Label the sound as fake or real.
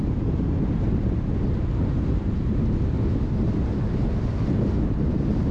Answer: real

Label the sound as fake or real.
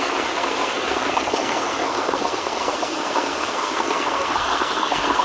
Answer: fake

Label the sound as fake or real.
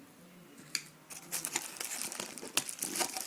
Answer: real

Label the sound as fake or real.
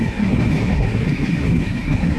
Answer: fake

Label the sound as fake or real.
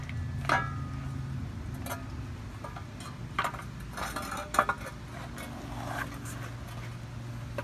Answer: real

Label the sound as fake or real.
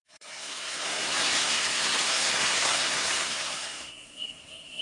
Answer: fake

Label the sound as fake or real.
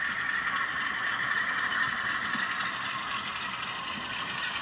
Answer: real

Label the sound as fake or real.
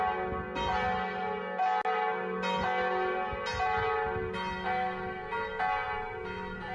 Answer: real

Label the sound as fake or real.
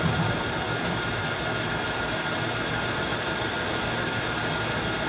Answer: real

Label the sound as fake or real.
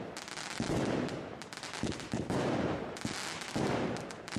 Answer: real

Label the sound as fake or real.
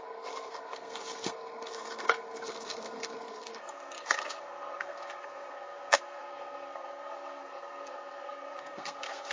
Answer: fake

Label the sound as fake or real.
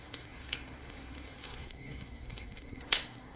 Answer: fake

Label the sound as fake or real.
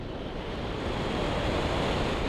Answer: real